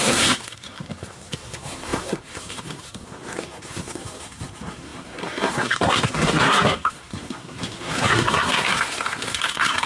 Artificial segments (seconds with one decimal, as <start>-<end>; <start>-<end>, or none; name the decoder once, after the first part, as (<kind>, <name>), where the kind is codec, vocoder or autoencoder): 0.0-9.9 (codec, SNAC)